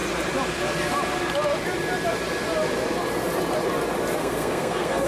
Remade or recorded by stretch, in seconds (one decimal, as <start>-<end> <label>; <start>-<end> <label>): 0.0-4.2 recorded; 4.2-5.1 remade